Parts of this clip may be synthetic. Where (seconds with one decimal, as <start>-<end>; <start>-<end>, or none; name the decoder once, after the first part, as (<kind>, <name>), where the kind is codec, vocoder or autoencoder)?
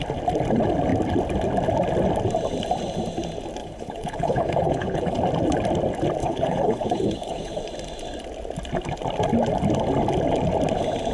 3.6-5.2 (codec, HILCodec); 6.2-7.6